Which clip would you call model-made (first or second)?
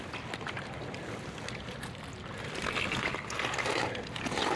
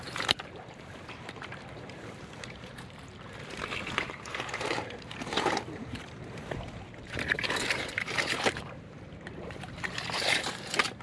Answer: second